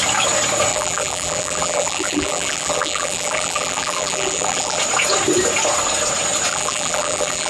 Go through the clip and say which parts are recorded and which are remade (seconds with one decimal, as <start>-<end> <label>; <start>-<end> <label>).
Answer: 0.0-0.7 recorded; 0.7-4.8 remade; 4.8-6.5 recorded; 6.5-7.5 remade